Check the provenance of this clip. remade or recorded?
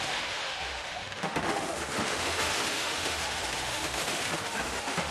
remade